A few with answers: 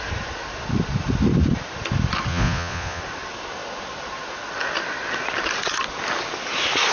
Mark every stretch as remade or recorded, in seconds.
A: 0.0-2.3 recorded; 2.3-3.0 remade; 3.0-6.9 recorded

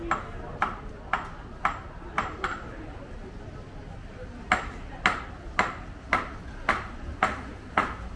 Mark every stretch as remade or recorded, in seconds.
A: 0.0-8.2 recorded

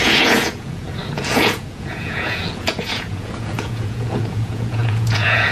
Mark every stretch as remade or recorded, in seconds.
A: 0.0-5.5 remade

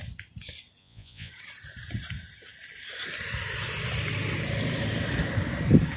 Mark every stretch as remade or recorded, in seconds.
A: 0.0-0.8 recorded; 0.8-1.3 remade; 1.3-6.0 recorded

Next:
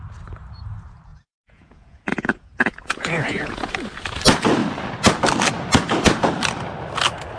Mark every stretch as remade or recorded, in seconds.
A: 0.0-1.1 recorded; 1.1-3.7 remade; 3.7-7.4 recorded